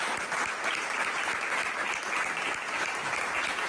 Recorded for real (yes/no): yes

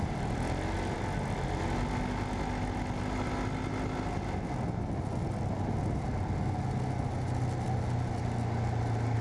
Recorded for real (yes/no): yes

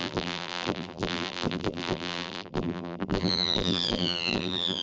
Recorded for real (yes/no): no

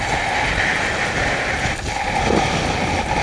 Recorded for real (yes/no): yes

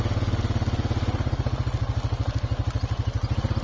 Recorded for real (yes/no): yes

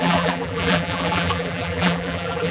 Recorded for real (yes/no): no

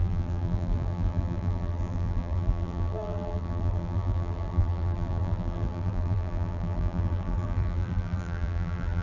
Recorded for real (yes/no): no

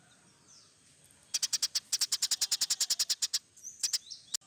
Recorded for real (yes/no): yes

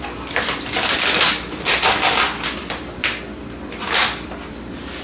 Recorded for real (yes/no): no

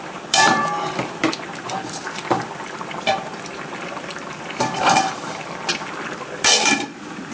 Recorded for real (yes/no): no